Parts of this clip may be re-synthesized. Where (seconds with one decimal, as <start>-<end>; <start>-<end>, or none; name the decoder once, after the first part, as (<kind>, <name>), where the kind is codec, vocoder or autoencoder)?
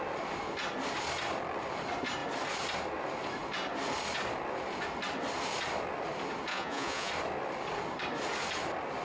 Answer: 6.5-7.1 (vocoder, Vocos)